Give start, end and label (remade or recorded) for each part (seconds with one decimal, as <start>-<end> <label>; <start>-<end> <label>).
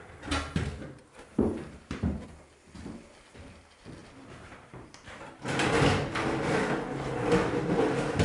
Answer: 0.0-1.0 recorded; 1.0-2.2 remade; 2.2-4.0 recorded; 4.0-5.3 remade; 5.3-8.2 recorded